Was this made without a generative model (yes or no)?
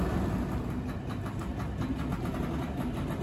yes